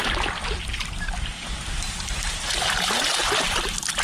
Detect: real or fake real